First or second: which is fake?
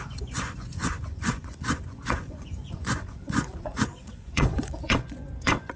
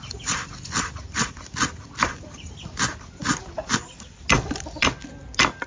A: first